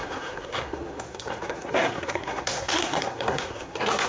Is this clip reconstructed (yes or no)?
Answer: yes